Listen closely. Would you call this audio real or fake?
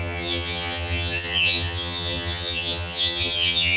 fake